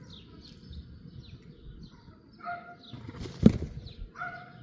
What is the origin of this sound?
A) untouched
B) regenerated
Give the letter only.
A